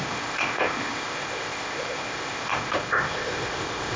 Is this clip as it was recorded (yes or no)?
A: no